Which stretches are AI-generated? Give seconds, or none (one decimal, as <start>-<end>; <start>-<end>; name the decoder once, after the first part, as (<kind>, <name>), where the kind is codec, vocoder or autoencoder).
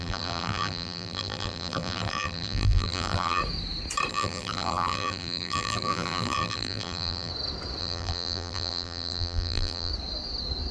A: 0.0-3.4 (vocoder, BigVGAN v2); 4.1-7.3; 7.8-9.9